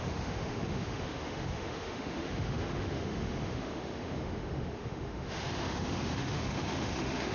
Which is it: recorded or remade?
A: remade